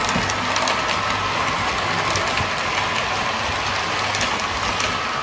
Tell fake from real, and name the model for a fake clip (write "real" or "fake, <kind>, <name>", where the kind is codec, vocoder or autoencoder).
real